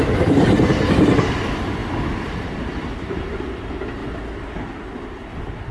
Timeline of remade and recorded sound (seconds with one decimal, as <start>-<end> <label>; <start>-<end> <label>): 0.0-4.0 recorded; 4.0-4.6 remade; 4.6-5.7 recorded